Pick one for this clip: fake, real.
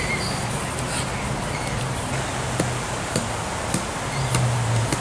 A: real